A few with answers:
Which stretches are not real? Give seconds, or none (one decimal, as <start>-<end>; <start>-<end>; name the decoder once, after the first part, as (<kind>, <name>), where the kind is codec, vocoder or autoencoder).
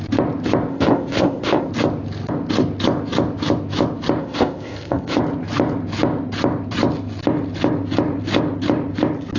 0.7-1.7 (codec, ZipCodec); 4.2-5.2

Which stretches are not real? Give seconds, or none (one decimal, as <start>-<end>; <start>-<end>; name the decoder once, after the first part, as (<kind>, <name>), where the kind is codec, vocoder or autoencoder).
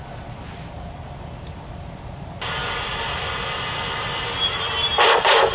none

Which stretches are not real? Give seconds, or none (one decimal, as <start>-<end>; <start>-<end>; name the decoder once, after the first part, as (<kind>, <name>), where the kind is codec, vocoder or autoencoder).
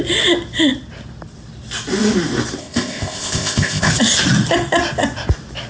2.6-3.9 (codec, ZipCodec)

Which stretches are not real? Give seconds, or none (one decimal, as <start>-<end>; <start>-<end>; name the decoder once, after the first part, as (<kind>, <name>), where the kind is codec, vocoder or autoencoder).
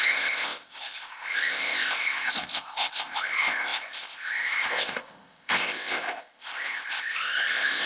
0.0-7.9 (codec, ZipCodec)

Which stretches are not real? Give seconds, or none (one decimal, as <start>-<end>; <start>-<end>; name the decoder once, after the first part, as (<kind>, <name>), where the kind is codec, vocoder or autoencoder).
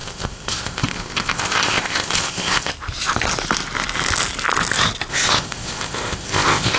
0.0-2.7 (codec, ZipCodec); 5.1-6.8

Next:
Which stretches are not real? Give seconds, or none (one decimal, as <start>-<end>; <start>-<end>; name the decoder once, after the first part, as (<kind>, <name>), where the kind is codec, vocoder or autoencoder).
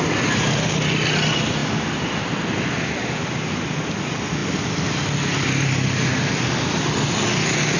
none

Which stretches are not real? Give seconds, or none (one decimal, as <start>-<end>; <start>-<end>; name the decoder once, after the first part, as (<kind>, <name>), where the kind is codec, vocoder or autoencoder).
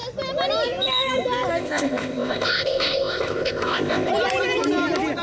1.6-4.1 (codec, ZipCodec)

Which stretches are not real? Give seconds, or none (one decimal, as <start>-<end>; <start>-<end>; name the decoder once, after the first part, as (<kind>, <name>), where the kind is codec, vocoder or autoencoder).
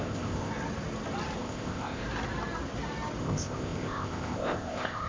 0.0-0.5 (codec, ZipCodec); 1.4-2.0; 3.2-5.1